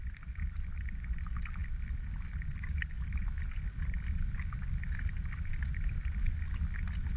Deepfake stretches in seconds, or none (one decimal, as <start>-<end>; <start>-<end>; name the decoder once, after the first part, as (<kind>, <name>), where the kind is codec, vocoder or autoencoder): none